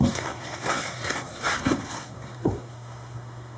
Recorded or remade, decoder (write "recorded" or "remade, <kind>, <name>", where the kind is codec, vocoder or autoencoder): remade, codec, SNAC